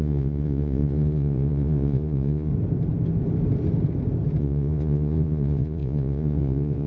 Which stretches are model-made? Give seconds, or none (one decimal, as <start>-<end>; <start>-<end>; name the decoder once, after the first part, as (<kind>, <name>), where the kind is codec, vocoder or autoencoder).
0.0-2.5 (vocoder, Vocos); 4.4-6.9